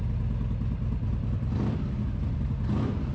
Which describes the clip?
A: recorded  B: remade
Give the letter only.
A